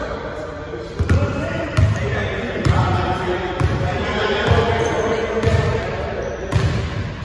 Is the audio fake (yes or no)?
no